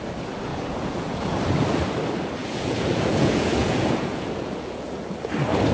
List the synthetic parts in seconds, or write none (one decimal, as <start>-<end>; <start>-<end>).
0.5-1.4; 2.4-5.1